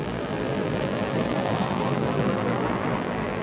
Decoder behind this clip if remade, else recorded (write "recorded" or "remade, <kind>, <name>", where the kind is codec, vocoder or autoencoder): remade, vocoder, BigVGAN v2